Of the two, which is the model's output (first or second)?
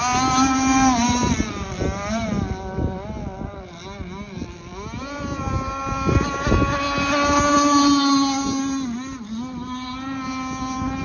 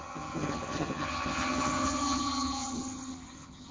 second